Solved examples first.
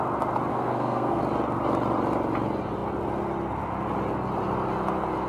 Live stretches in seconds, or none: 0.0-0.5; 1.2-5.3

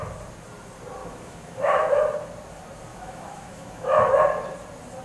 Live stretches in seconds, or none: 0.0-1.0; 2.0-2.9; 4.2-5.0

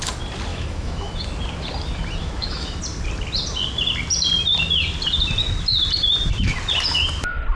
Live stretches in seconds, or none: 0.0-0.5; 1.1-2.2; 2.8-7.6

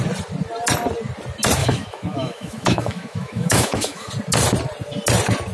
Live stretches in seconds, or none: 0.0-1.6; 4.1-5.5

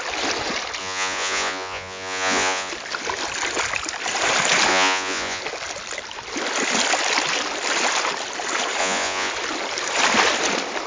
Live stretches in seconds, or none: 0.0-0.8; 2.7-4.7; 5.4-8.8; 9.3-10.9

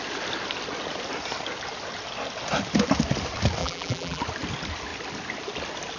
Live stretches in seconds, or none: 0.0-3.6; 4.2-6.0

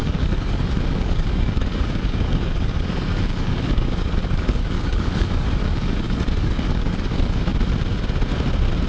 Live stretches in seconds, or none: 7.5-8.9

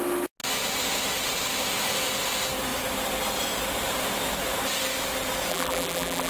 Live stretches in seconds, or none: 0.0-5.5